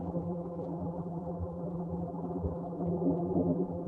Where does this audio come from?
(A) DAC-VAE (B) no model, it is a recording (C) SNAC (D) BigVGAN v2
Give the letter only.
D